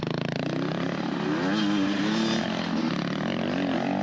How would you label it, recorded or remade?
recorded